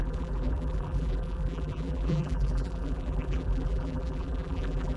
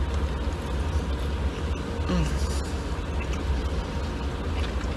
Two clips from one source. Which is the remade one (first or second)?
first